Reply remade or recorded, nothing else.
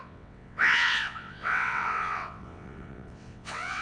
remade